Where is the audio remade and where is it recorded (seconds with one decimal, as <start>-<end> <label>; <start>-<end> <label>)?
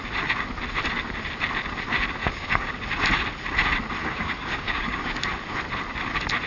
0.0-2.2 recorded; 2.2-2.7 remade; 2.7-4.0 recorded; 4.0-5.3 remade; 5.3-6.5 recorded